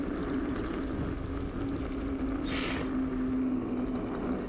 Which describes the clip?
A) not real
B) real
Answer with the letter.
B